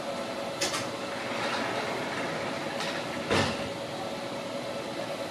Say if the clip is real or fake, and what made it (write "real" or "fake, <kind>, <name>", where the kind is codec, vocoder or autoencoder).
real